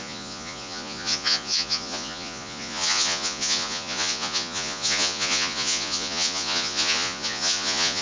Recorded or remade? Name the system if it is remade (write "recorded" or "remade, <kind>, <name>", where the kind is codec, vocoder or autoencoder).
remade, vocoder, Vocos